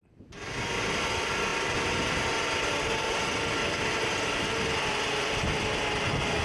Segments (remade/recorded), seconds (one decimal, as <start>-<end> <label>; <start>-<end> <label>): 0.0-6.4 recorded